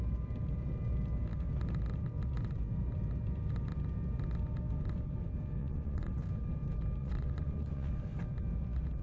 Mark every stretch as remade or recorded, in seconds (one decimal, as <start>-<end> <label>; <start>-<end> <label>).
0.0-5.6 recorded; 5.6-6.1 remade; 6.1-7.0 recorded; 7.0-7.9 remade; 7.9-9.0 recorded

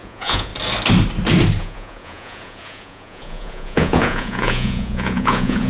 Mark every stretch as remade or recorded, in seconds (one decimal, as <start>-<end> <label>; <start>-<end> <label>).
0.0-0.5 remade; 0.5-1.6 recorded; 1.6-5.7 remade

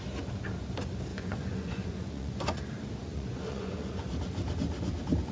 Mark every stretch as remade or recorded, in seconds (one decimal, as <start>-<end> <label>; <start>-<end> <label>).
0.0-1.1 recorded; 1.1-2.6 remade; 2.6-3.0 recorded; 3.0-4.1 remade; 4.1-5.3 recorded

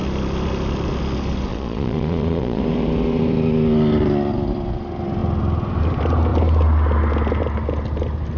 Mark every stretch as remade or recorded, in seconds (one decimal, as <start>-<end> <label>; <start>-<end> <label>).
0.0-1.5 recorded; 1.5-2.6 remade; 2.6-8.4 recorded

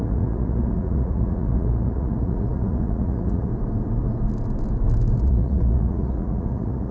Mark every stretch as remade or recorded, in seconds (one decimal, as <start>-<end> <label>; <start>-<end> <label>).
0.0-3.5 remade; 3.5-5.2 recorded; 5.2-6.9 remade

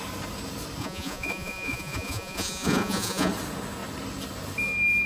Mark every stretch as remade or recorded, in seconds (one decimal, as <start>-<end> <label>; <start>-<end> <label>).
0.0-0.8 recorded; 0.8-3.3 remade; 3.3-5.1 recorded